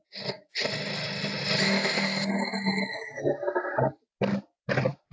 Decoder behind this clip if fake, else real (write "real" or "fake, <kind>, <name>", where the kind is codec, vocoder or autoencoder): real